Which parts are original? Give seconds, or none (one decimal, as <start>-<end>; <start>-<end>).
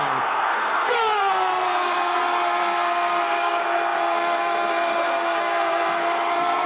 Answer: none